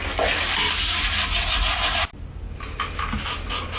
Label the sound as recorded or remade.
recorded